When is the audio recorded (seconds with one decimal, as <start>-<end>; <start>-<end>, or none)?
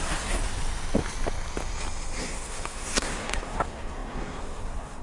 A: 0.4-2.2